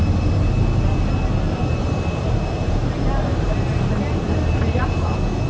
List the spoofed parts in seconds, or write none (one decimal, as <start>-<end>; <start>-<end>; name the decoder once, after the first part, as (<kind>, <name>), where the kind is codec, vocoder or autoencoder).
1.6-4.9 (vocoder, BigVGAN v2)